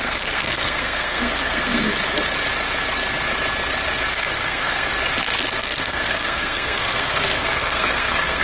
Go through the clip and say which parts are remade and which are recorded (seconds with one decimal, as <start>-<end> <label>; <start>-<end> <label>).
0.0-1.9 remade; 1.9-4.1 recorded; 4.1-4.9 remade; 4.9-5.6 recorded; 5.6-8.4 remade

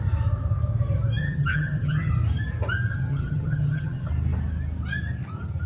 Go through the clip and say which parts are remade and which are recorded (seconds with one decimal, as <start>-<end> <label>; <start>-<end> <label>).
0.0-1.2 recorded; 1.2-2.1 remade; 2.1-2.9 recorded; 2.9-4.1 remade; 4.1-5.7 recorded

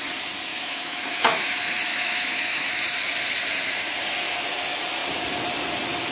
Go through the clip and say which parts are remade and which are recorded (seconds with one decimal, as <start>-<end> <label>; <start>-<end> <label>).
0.0-0.5 recorded; 0.5-1.5 remade; 1.5-1.9 recorded; 1.9-2.7 remade; 2.7-6.1 recorded

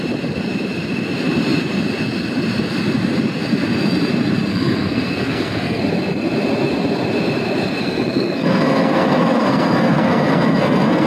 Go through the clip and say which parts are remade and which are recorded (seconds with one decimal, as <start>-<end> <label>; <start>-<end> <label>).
0.0-4.5 recorded; 4.5-5.8 remade; 5.8-7.8 recorded; 7.8-11.1 remade